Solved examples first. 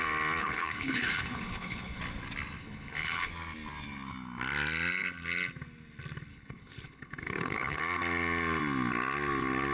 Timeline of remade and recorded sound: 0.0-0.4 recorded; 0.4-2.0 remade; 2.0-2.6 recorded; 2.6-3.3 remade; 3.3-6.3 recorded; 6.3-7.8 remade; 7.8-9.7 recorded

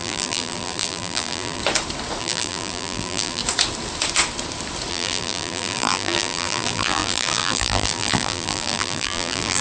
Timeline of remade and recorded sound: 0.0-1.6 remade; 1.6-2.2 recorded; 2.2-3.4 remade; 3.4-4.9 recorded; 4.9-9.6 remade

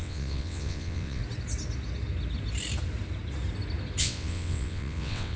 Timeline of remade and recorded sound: 0.0-1.2 remade; 1.2-4.0 recorded; 4.0-5.4 remade

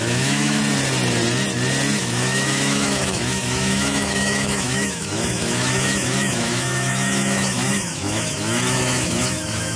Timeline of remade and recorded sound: 0.0-0.6 remade; 0.6-2.0 recorded; 2.0-9.8 remade